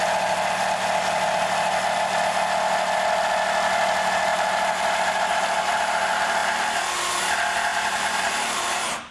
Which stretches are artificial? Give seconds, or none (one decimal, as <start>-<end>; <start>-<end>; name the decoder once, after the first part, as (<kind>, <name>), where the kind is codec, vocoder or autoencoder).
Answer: 4.3-5.4 (vocoder, BigVGAN v2); 7.7-9.1